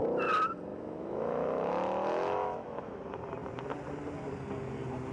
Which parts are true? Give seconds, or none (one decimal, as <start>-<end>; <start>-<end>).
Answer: 0.0-0.7; 3.0-5.1